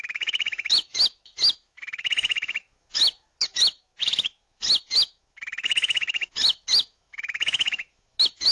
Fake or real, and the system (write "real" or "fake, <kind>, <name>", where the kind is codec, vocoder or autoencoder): fake, autoencoder, DAC-VAE